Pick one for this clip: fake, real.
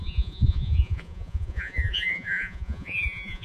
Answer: fake